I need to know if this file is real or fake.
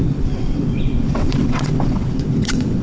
fake